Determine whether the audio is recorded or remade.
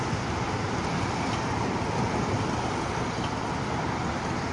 recorded